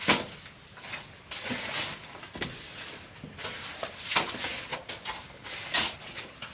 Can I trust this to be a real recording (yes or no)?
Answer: yes